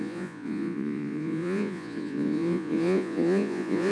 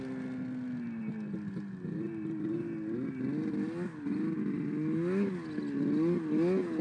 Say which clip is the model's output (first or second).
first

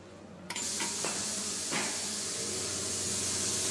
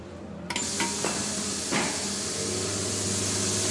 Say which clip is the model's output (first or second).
first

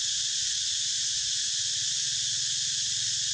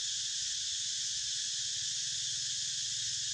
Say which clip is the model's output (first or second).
second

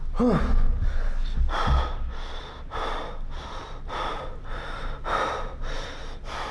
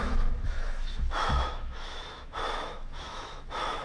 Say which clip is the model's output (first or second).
second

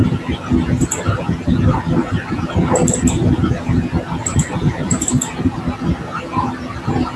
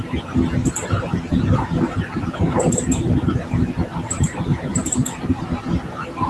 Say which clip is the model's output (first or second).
second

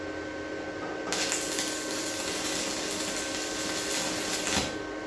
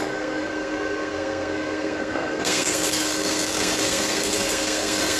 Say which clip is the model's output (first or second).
second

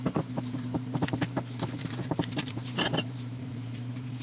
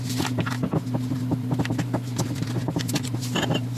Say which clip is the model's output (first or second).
first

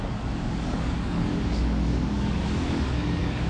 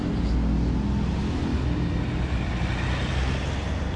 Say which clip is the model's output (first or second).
first